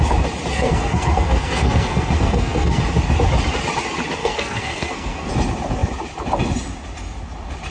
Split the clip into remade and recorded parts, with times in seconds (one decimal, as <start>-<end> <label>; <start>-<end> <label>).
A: 0.0-0.5 recorded; 0.5-2.8 remade; 2.8-4.2 recorded; 4.2-5.3 remade; 5.3-7.7 recorded